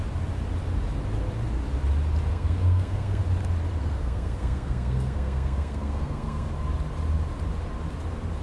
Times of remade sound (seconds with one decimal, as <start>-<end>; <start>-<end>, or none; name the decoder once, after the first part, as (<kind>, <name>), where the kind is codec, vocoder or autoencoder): 2.3-3.2 (codec, SNAC); 3.8-6.5